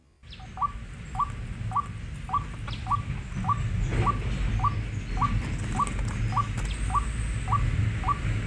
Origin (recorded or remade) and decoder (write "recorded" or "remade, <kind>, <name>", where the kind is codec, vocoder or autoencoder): recorded